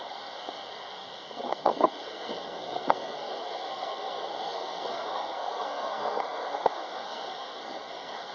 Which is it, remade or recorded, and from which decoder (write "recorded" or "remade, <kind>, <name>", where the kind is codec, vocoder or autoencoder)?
remade, codec, SNAC